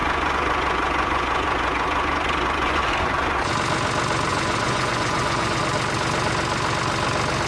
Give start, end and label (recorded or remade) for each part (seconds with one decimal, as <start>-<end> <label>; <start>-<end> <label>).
0.0-3.5 remade; 3.5-4.3 recorded; 4.3-5.6 remade; 5.6-7.5 recorded